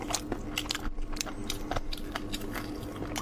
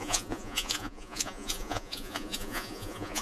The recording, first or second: first